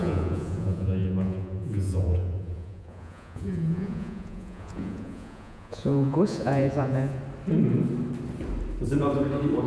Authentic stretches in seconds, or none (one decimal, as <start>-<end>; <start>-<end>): 7.2-9.7